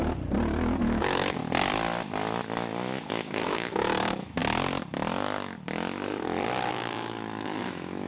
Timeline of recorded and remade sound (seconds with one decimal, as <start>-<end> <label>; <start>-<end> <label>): 0.0-0.8 recorded; 0.8-1.4 remade; 1.4-3.1 recorded; 3.1-4.4 remade; 4.4-6.7 recorded; 6.7-8.1 remade